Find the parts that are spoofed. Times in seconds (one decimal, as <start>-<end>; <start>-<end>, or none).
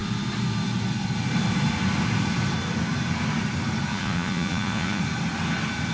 3.9-5.0